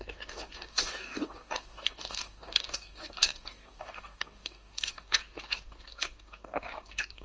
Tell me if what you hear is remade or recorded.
remade